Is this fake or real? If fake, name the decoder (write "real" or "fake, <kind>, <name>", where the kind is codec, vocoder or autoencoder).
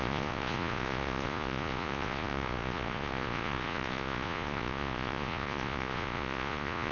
fake, vocoder, Vocos